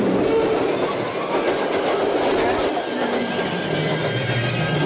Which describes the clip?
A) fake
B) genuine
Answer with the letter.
B